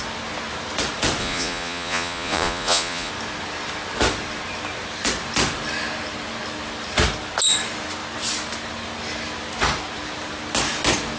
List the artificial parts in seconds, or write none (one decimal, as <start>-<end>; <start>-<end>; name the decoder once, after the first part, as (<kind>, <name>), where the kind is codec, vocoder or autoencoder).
1.2-3.1 (vocoder, Vocos)